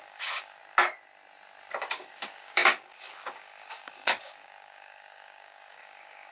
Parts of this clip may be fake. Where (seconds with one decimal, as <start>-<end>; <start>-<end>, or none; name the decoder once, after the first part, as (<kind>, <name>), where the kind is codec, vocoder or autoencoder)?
0.0-0.6 (codec, DAC); 1.8-6.3